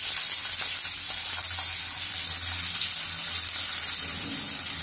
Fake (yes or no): no